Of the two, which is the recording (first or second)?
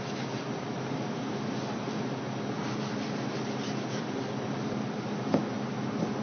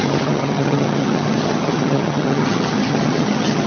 first